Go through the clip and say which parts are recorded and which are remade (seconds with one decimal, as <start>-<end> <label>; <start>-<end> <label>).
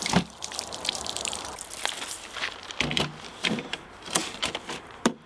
0.0-1.5 remade; 1.5-3.3 recorded; 3.3-5.3 remade